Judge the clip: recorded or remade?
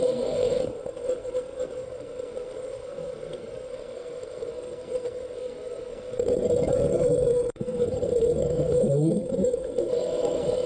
remade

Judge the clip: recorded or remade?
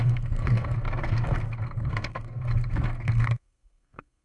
remade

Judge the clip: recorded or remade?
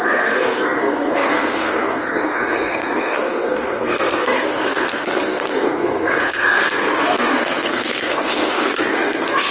remade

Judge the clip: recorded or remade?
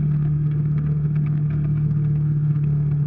remade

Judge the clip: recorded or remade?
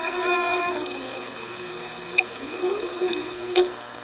remade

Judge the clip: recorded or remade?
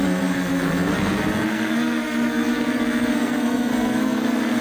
remade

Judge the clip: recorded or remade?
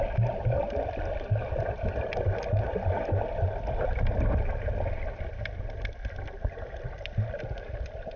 recorded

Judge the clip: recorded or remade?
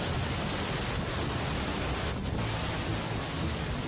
recorded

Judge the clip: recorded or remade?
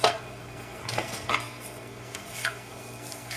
remade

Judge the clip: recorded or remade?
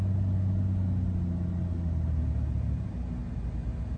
recorded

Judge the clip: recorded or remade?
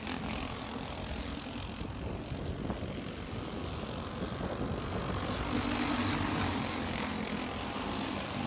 recorded